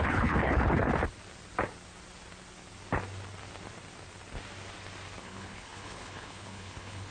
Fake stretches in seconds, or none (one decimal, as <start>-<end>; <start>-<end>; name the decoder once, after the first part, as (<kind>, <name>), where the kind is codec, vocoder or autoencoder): 0.0-0.9 (codec, HILCodec); 5.2-7.1

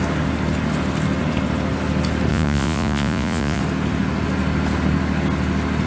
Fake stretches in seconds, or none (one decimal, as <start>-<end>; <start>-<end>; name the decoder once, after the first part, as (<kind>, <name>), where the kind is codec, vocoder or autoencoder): 2.3-3.6 (vocoder, Vocos)

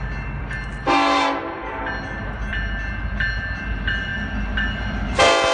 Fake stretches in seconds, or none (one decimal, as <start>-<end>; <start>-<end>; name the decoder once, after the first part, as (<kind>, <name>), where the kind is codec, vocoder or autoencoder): none

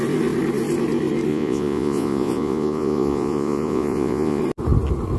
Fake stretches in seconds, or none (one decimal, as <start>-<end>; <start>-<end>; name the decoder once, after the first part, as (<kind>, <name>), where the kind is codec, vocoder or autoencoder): 1.3-4.4 (vocoder, Vocos)

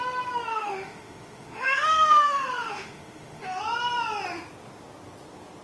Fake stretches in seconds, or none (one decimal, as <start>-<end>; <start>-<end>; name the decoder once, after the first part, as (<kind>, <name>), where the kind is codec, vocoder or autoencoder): 0.5-3.6 (autoencoder, DAC-VAE)

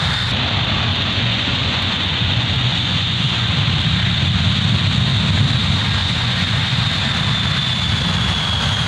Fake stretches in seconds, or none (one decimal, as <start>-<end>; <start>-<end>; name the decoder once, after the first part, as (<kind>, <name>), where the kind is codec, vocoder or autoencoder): 0.9-3.5 (vocoder, Vocos); 6.0-6.8

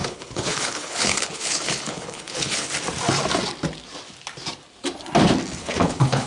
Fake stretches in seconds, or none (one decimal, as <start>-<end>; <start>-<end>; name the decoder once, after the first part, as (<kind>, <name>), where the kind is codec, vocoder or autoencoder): 0.0-2.7 (codec, HILCodec); 5.6-6.3